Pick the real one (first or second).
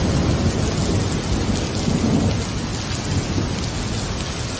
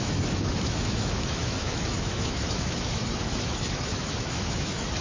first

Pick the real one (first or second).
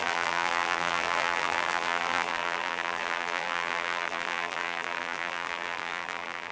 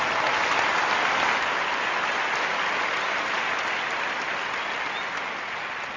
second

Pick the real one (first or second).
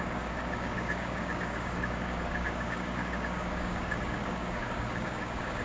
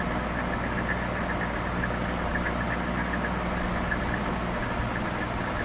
second